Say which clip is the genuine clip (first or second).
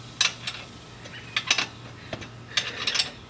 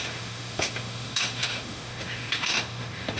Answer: first